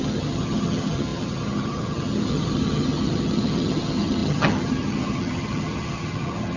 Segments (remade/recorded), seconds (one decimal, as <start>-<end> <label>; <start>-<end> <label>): 0.0-6.6 remade